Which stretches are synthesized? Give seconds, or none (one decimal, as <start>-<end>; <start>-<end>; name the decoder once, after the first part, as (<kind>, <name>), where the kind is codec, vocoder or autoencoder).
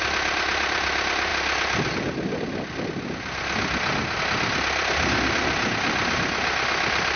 none